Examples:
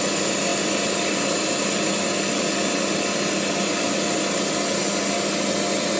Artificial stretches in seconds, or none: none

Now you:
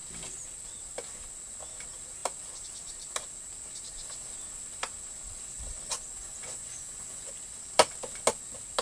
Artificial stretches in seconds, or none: 6.1-7.3 (vocoder, Vocos)

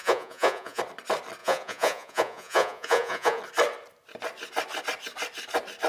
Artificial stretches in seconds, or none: 0.0-0.8 (vocoder, Vocos); 1.4-3.4

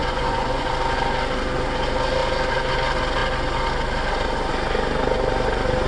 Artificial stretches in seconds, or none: 0.0-0.7 (vocoder, Vocos)

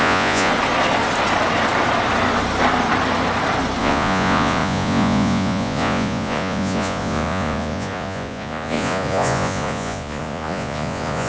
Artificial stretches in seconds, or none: 0.0-0.5 (vocoder, Vocos); 3.8-11.3

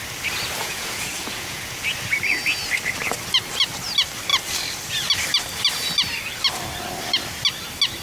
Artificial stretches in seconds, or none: 0.6-1.8 (vocoder, Vocos)

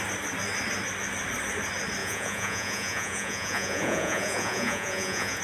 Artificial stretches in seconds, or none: 2.0-5.4 (vocoder, Vocos)

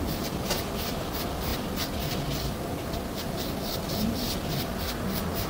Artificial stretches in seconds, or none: none